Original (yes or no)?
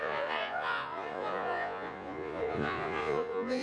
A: no